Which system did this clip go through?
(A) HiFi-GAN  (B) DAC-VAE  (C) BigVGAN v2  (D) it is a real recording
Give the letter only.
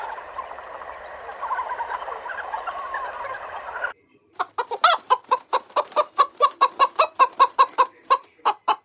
C